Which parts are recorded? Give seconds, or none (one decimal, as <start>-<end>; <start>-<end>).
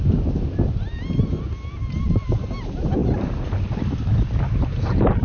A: 0.0-5.2